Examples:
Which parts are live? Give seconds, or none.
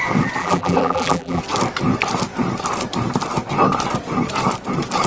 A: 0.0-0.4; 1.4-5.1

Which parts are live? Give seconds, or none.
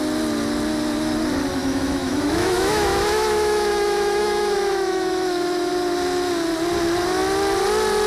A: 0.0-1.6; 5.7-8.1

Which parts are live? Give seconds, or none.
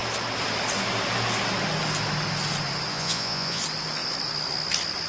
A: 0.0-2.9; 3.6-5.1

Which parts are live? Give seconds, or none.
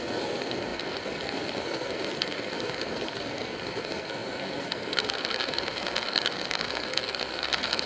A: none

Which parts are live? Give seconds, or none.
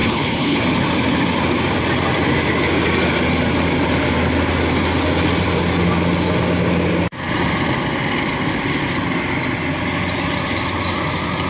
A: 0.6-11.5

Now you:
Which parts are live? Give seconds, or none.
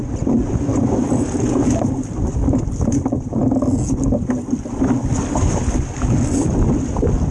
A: 3.4-4.4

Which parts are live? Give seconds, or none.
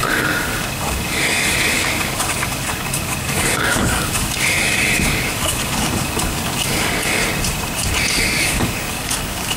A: 7.2-8.1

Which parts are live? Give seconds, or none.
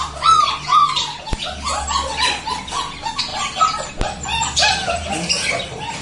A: 0.0-6.0